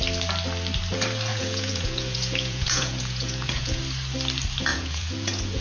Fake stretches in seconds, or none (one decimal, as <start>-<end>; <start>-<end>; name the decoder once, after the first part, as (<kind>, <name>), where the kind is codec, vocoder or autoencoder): 1.3-3.8 (vocoder, Vocos); 4.7-5.6